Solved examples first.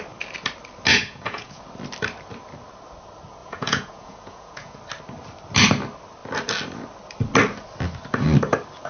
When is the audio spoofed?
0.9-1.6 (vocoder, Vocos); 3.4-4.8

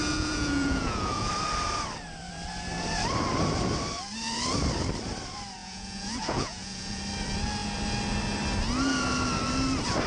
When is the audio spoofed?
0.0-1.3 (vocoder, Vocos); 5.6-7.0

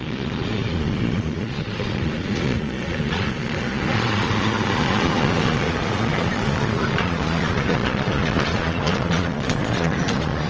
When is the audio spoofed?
0.0-10.5 (vocoder, Vocos)

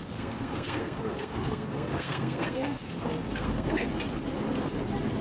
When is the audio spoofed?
0.0-3.9 (codec, SNAC)

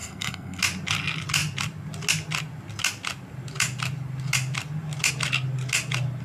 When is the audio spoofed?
0.0-0.6 (codec, SNAC)

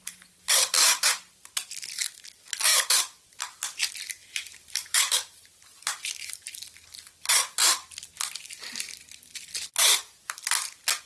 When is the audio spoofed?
4.2-5.0 (vocoder, BigVGAN v2)

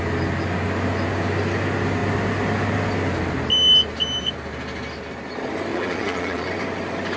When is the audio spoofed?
5.7-6.5 (vocoder, Vocos)